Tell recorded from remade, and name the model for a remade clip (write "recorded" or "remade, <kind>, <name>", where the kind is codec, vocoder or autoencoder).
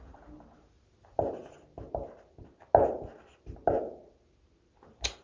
recorded